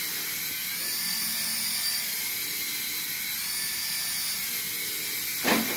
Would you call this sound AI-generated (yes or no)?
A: no